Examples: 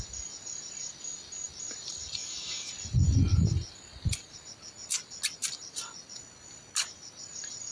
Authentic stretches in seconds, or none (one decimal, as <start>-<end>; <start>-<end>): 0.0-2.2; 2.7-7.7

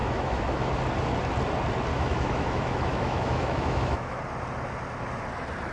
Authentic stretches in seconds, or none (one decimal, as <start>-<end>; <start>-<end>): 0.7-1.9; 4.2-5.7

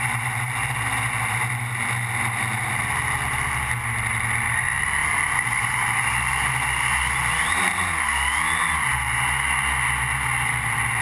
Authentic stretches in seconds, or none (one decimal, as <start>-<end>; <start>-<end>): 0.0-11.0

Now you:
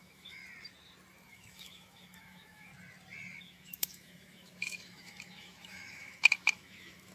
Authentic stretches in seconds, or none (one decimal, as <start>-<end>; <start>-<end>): 0.4-1.3; 2.7-3.4

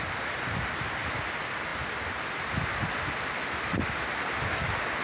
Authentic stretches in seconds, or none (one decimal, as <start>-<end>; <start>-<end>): 0.0-5.0